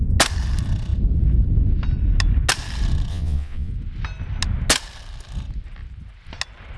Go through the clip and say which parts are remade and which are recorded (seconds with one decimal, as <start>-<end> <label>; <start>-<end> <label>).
0.0-3.1 recorded; 3.1-3.7 remade; 3.7-6.8 recorded